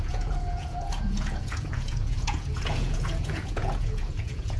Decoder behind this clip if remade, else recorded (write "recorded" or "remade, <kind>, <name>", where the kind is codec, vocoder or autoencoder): remade, vocoder, Vocos